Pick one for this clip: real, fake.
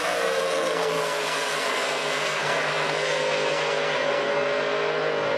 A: fake